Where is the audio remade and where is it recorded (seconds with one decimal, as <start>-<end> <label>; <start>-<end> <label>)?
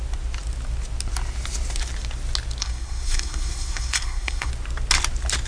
0.0-2.6 recorded; 2.6-4.5 remade; 4.5-5.5 recorded